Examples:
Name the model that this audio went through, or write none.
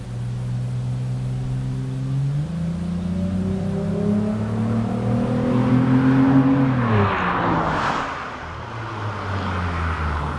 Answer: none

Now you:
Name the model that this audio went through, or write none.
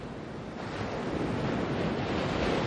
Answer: none